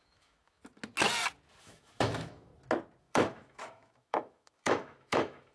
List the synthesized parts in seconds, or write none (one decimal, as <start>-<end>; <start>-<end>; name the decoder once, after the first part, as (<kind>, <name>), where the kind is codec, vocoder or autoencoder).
0.0-0.6 (autoencoder, DAC-VAE); 1.6-2.5; 3.0-5.5